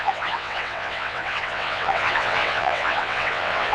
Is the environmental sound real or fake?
fake